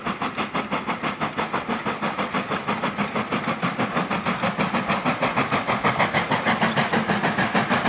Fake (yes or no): no